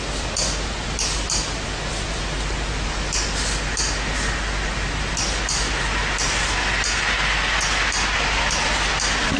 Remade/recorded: recorded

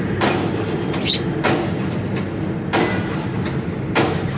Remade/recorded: recorded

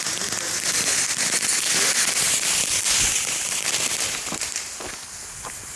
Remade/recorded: recorded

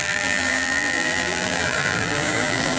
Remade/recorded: remade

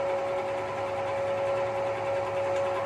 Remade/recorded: recorded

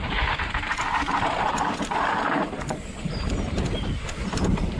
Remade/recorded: remade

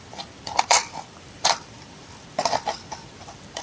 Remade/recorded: remade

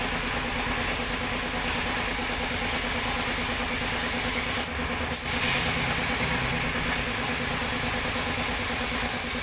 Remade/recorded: recorded